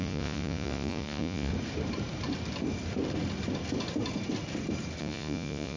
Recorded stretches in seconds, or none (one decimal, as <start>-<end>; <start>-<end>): 1.5-5.0